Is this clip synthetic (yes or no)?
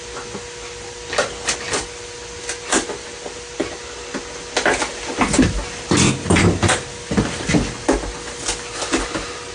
no